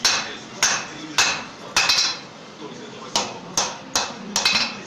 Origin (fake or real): real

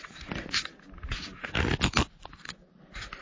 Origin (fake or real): real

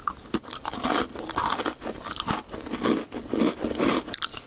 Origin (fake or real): real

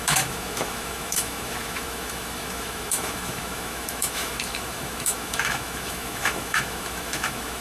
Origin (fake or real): fake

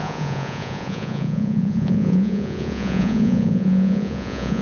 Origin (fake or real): fake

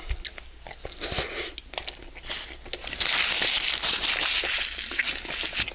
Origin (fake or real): real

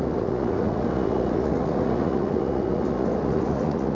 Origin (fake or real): fake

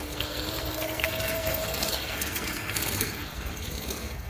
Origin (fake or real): fake